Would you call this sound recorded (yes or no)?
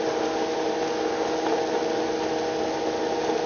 yes